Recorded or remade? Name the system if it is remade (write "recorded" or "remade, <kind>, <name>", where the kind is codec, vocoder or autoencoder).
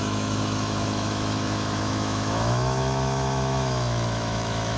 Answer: remade, autoencoder, DAC-VAE